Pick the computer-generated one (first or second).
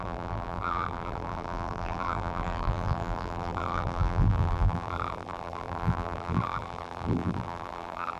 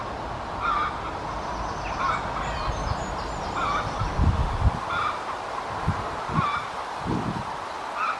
first